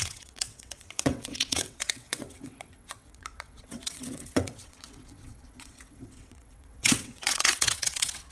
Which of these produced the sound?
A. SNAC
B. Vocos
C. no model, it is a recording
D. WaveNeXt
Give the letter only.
D